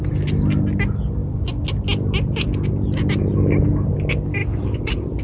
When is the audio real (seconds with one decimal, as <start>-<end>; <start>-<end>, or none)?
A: 0.0-4.4